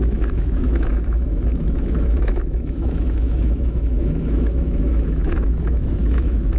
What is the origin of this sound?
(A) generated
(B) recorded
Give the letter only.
A